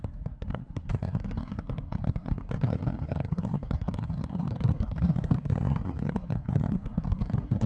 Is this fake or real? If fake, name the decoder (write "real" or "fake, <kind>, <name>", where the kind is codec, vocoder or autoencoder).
fake, codec, SNAC